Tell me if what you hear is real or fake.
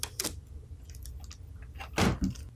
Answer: real